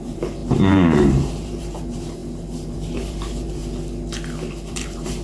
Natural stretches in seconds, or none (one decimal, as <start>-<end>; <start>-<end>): 3.6-4.7